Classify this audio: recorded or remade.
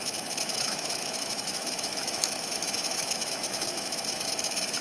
remade